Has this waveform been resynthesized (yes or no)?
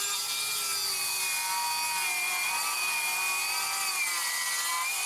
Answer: no